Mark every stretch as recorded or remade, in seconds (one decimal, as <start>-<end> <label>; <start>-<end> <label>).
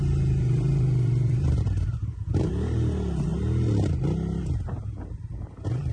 0.0-3.3 remade; 3.3-4.4 recorded; 4.4-5.9 remade